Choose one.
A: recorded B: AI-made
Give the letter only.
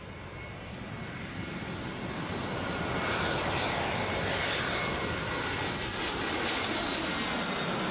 A